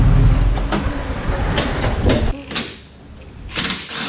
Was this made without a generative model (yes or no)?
yes